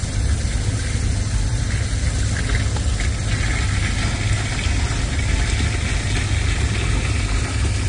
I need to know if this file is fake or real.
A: real